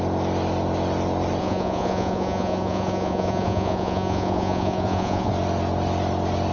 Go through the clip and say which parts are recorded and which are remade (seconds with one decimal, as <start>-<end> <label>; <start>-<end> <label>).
0.0-1.4 recorded; 1.4-5.3 remade; 5.3-6.5 recorded